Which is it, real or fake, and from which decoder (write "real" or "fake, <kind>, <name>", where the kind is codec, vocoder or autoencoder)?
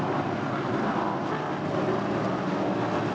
real